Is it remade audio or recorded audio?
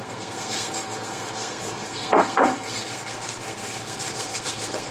remade